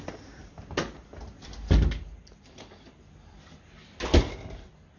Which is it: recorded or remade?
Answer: recorded